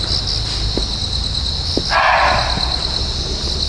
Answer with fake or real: real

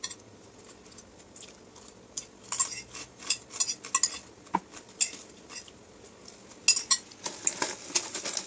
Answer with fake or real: real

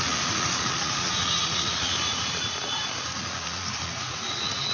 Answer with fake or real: fake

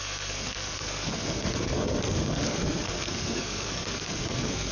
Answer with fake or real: fake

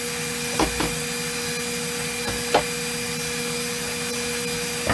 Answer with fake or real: real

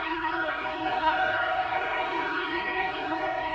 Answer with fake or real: fake